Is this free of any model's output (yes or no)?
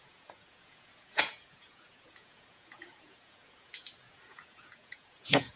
no